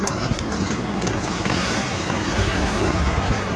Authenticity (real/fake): fake